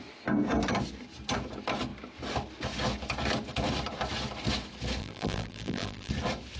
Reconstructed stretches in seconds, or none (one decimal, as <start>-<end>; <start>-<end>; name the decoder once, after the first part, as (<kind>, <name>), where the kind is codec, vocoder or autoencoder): 5.0-6.1 (vocoder, BigVGAN v2)